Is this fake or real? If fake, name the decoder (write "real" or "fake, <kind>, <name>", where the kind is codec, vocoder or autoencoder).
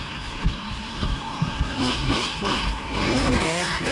fake, codec, SNAC